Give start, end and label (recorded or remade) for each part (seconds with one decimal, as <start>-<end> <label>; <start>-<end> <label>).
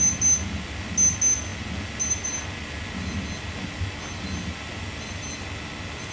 0.0-6.1 recorded